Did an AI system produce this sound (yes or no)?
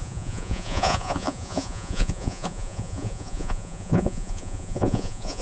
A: yes